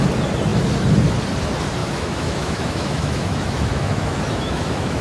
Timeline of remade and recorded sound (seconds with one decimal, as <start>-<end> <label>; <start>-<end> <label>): 0.0-1.8 recorded; 1.8-5.0 remade